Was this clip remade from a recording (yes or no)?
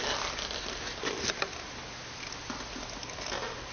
no